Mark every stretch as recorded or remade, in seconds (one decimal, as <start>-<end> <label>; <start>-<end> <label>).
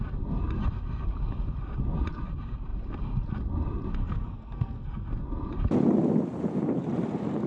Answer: 0.0-4.0 recorded; 4.0-5.1 remade; 5.1-7.5 recorded